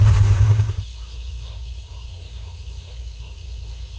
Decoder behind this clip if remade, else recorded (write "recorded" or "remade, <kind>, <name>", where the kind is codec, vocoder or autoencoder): remade, codec, SNAC